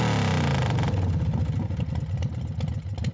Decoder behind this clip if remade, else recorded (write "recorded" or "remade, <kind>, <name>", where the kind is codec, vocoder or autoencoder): recorded